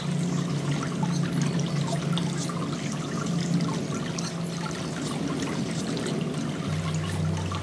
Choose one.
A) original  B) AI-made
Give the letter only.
A